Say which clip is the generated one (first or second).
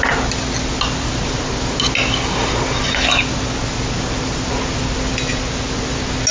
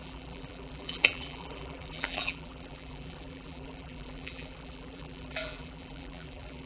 second